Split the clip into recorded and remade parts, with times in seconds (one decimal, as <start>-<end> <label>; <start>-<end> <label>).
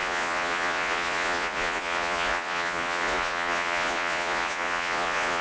0.0-5.4 remade